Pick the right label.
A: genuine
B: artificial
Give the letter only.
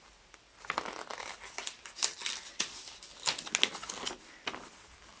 A